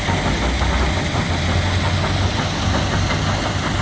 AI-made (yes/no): no